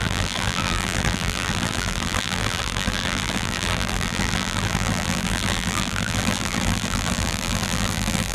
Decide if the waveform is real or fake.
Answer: fake